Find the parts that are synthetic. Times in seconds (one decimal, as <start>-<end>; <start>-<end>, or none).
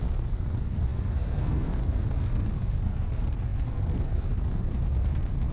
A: 0.0-5.5